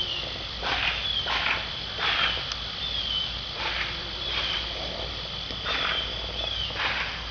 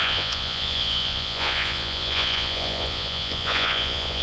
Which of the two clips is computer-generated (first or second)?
second